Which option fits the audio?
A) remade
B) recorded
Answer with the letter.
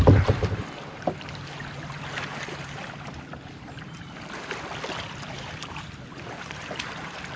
B